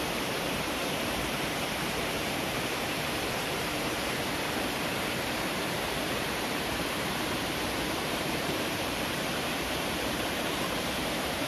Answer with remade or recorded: remade